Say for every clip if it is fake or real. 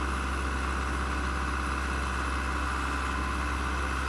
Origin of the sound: real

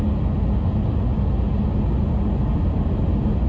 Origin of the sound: real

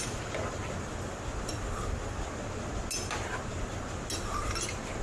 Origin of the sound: real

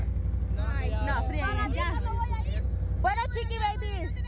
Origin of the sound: real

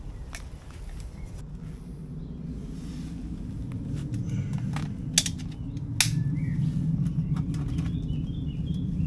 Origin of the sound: real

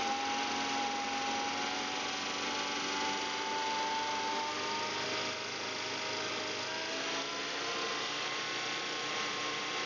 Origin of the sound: real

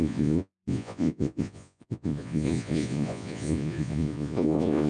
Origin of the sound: fake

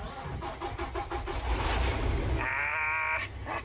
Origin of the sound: real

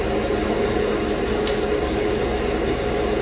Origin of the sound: real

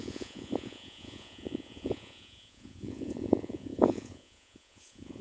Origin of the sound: fake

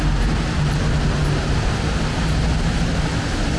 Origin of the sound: real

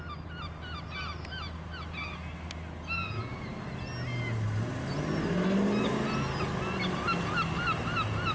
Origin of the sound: real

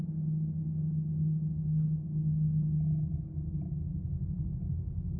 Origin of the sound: real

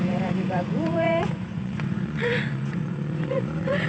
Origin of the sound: fake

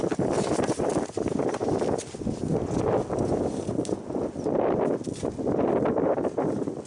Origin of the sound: real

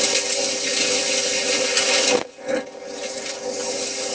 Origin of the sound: real